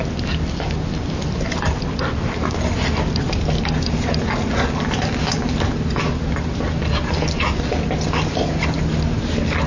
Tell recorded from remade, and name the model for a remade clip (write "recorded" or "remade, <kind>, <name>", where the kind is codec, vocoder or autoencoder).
recorded